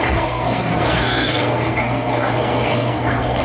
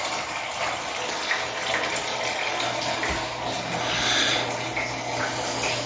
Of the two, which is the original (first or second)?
second